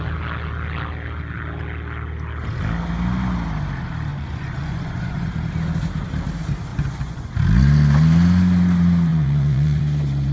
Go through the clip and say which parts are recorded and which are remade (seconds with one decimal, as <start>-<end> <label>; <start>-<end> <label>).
0.0-4.1 recorded; 4.1-5.3 remade; 5.3-6.7 recorded; 6.7-7.3 remade; 7.3-9.1 recorded; 9.1-9.8 remade; 9.8-10.3 recorded